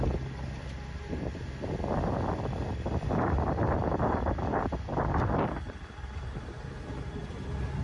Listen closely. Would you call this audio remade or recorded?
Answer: recorded